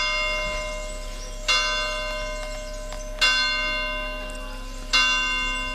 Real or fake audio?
real